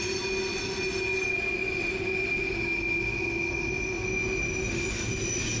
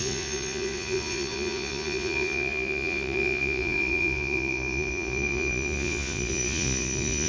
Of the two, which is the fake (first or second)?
second